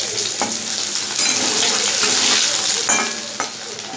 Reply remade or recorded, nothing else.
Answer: recorded